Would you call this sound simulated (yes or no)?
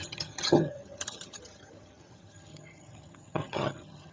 yes